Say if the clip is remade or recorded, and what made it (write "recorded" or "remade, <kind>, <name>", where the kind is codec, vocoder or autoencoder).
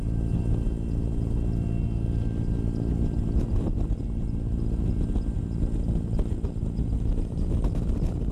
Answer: recorded